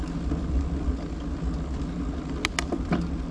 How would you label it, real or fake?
real